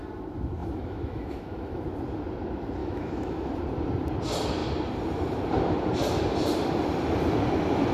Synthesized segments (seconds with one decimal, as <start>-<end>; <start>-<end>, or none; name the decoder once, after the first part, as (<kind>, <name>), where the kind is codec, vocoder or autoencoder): 0.6-1.8 (autoencoder, DAC-VAE); 2.8-3.5